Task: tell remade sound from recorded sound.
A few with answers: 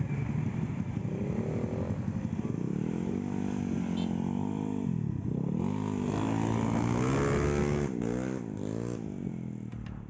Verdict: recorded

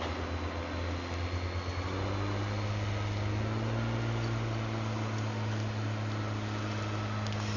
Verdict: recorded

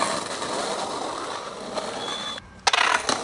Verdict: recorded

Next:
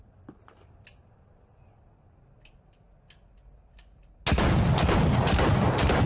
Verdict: recorded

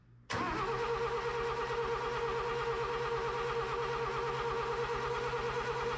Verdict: recorded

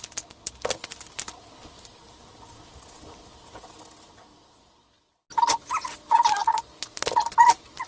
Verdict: recorded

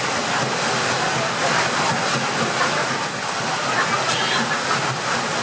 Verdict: recorded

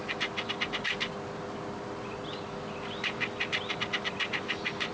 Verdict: recorded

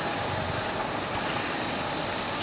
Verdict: recorded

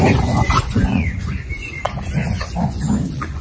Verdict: remade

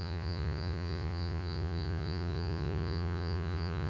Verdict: remade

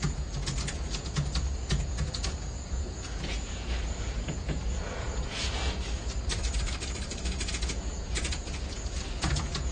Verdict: remade